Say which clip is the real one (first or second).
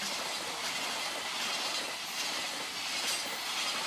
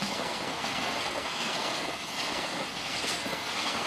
first